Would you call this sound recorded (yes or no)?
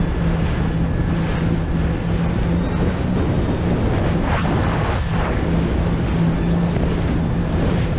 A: yes